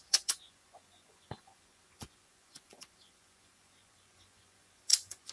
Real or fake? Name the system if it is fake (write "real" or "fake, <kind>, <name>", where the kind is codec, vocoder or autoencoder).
fake, vocoder, Vocos